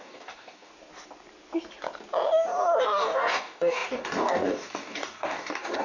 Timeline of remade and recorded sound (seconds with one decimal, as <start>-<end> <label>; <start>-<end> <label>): 0.0-0.7 remade; 0.7-2.8 recorded; 2.8-5.8 remade